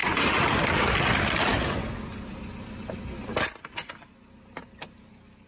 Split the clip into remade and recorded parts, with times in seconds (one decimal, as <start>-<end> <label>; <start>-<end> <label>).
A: 0.0-5.5 recorded